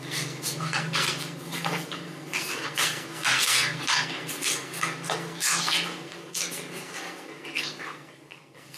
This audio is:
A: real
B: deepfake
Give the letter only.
B